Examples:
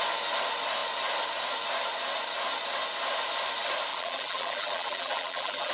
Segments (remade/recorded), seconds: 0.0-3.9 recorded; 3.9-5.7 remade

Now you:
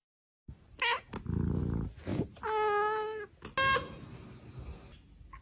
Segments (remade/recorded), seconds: 0.0-5.4 recorded

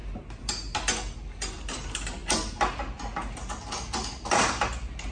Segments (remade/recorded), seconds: 0.0-5.1 recorded